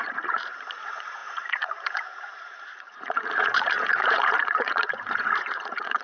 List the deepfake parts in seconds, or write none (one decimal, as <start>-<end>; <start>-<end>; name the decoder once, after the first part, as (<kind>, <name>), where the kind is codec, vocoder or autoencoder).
0.0-6.0 (vocoder, Vocos)